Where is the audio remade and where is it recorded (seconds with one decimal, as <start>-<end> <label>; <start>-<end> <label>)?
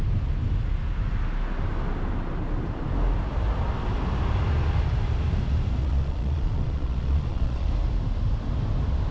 0.0-5.8 recorded; 5.8-7.7 remade; 7.7-9.1 recorded